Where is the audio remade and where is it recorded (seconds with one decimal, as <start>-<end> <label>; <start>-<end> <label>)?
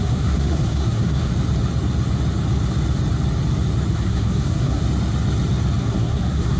0.0-1.3 remade; 1.3-3.9 recorded; 3.9-4.8 remade; 4.8-5.8 recorded; 5.8-6.6 remade